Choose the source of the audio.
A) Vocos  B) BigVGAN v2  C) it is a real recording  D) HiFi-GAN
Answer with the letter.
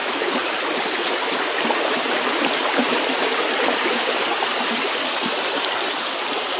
B